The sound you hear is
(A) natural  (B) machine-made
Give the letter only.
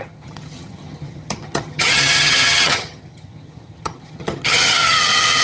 B